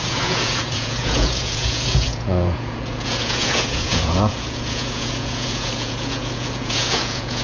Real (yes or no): no